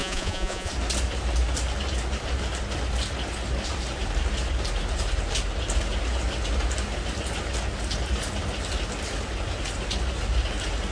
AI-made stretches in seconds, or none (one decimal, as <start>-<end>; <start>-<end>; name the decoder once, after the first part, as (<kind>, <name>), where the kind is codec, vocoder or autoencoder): 0.0-0.7 (vocoder, Vocos)